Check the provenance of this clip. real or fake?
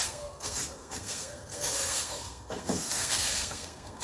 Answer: fake